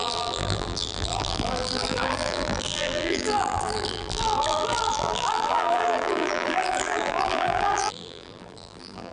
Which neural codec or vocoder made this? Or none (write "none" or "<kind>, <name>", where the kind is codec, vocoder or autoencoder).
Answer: vocoder, BigVGAN v2